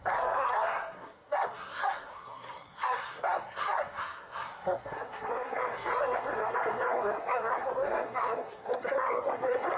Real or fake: fake